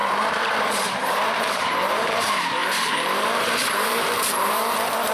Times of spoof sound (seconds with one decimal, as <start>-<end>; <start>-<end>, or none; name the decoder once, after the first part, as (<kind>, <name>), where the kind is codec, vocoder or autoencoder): 0.0-5.1 (vocoder, BigVGAN v2)